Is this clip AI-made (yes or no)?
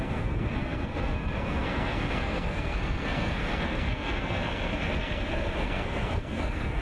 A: yes